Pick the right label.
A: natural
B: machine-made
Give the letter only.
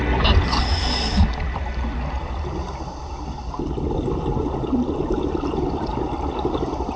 A